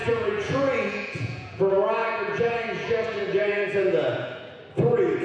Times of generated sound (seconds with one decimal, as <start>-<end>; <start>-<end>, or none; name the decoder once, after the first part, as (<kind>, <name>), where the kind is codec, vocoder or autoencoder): 0.0-1.6 (vocoder, Vocos); 2.0-4.4